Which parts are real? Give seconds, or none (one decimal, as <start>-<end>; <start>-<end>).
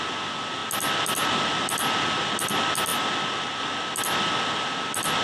0.0-5.2